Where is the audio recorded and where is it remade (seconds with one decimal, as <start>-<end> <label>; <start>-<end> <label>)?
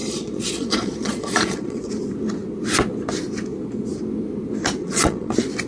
0.0-1.9 remade; 1.9-4.8 recorded; 4.8-5.3 remade; 5.3-5.7 recorded